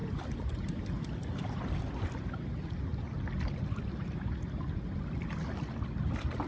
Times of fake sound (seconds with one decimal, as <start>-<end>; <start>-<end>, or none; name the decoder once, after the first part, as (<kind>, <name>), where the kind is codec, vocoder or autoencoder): none